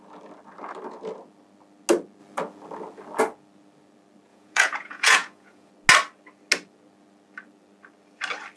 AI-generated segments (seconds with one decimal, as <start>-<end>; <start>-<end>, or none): 4.3-5.7